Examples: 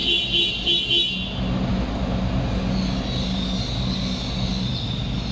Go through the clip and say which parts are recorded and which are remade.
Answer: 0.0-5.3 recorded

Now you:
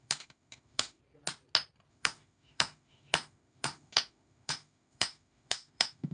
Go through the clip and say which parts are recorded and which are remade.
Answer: 0.0-1.0 remade; 1.0-1.9 recorded; 1.9-6.1 remade

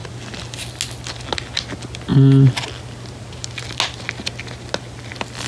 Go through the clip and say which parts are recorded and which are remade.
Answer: 0.0-5.5 recorded